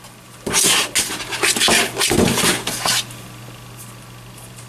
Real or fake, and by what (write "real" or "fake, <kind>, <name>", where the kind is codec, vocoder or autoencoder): real